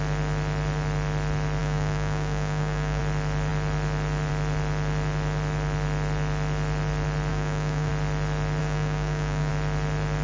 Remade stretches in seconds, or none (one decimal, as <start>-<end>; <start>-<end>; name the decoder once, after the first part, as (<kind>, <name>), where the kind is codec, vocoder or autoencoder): 1.6-3.0 (codec, DAC); 7.3-7.9; 8.6-9.5